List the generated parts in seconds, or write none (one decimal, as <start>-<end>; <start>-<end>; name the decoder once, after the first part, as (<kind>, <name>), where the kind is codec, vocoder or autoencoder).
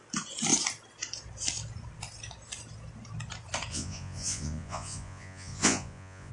3.7-6.3 (vocoder, Vocos)